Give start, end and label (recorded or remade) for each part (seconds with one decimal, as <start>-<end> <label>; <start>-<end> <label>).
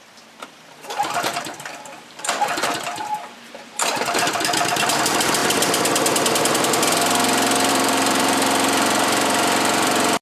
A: 0.0-5.4 remade; 5.4-7.7 recorded; 7.7-10.2 remade